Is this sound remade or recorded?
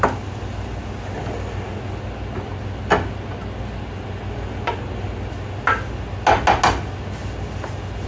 recorded